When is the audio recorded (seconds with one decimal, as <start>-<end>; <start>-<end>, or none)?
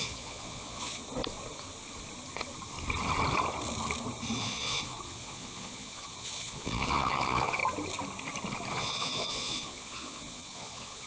1.0-4.4; 7.6-8.7